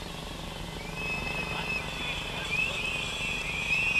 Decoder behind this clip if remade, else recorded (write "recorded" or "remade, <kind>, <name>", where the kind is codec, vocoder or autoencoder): remade, vocoder, BigVGAN v2